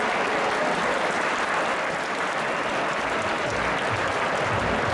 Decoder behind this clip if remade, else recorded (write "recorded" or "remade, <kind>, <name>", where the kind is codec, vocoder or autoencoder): recorded